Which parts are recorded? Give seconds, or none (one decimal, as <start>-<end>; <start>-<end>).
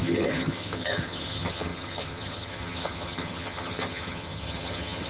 none